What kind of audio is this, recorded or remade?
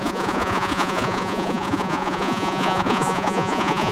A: remade